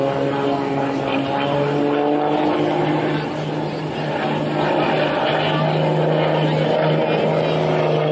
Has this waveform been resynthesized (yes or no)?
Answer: no